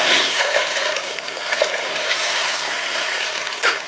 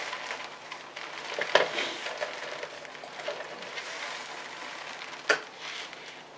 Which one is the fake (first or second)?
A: first